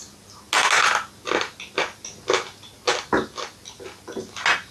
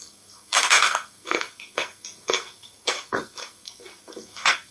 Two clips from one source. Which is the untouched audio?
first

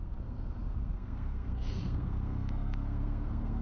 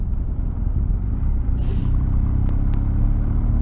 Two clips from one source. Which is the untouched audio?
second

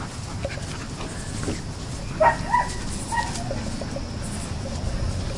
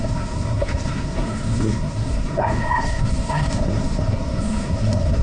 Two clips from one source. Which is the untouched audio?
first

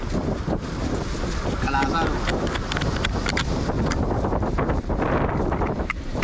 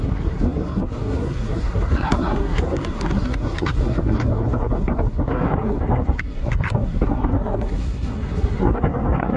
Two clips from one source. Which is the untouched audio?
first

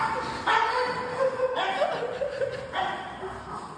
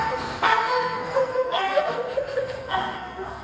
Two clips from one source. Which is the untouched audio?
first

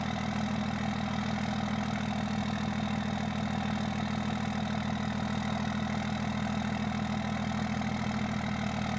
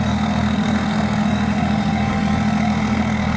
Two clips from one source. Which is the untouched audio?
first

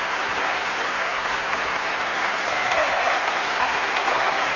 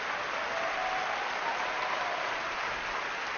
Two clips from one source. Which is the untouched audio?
second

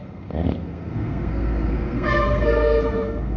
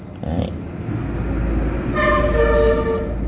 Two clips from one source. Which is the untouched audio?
second